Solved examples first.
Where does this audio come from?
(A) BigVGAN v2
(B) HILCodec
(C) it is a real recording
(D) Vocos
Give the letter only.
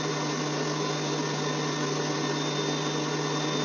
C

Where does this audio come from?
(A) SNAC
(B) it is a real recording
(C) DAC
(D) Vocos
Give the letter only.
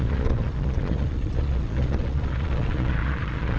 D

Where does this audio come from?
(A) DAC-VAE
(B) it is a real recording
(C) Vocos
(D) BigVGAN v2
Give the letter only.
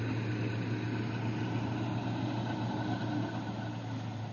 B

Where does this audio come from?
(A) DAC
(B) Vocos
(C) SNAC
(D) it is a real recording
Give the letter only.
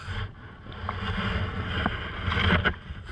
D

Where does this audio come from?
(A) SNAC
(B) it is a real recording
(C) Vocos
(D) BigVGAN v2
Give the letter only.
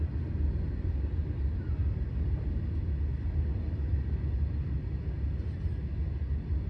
B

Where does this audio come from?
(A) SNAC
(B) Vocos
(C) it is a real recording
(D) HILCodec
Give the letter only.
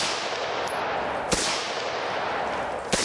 C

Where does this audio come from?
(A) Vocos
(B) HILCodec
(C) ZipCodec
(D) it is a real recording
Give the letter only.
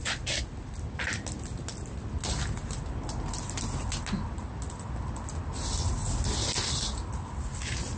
D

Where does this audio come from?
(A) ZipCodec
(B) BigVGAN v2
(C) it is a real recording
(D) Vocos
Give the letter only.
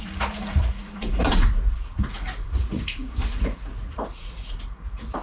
D